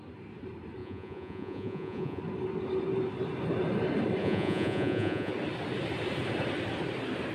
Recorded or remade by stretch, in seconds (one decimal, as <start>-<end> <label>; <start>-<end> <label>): 0.0-0.8 recorded; 0.8-2.2 remade; 2.2-4.2 recorded; 4.2-5.3 remade; 5.3-7.3 recorded